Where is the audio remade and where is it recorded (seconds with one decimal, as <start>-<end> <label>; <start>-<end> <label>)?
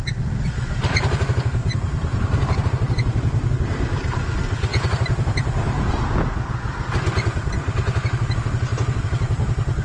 0.0-1.6 recorded; 1.6-3.5 remade; 3.5-4.7 recorded; 4.7-5.9 remade; 5.9-9.8 recorded